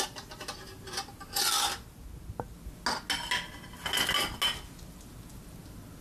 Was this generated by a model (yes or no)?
no